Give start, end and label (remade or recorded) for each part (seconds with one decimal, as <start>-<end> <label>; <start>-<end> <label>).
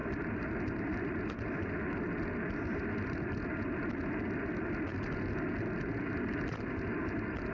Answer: 0.0-0.6 remade; 0.6-2.7 recorded; 2.7-3.3 remade; 3.3-7.5 recorded